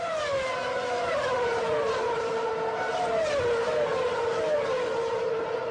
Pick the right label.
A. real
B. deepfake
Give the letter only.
A